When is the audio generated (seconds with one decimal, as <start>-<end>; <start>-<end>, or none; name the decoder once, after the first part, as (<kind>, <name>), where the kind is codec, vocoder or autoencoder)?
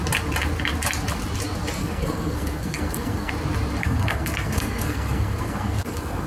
1.8-3.3 (codec, SNAC); 3.8-6.3